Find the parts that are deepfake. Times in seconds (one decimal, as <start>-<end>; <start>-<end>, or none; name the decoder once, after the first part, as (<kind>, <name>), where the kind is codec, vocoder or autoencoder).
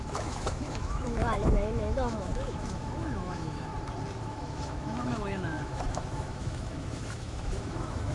0.0-3.7 (autoencoder, DAC-VAE); 4.2-8.1